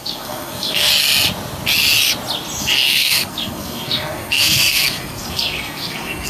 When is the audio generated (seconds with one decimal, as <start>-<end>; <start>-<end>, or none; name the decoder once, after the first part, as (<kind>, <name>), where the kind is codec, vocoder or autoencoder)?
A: 0.0-0.9 (codec, SNAC); 2.6-6.3